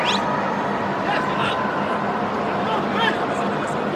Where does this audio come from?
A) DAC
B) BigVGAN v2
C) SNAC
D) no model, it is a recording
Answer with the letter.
D